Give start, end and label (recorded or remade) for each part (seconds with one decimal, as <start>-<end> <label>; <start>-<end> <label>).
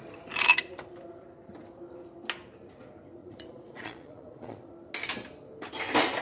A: 0.0-3.2 recorded; 3.2-4.7 remade; 4.7-6.2 recorded